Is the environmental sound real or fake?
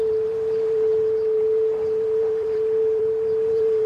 fake